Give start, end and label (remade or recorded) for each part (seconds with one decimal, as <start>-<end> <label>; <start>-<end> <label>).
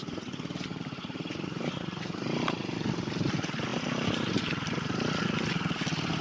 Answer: 0.0-0.7 recorded; 0.7-2.2 remade; 2.2-6.2 recorded